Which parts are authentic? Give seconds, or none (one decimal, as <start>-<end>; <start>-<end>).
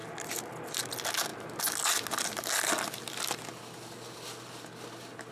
0.0-5.3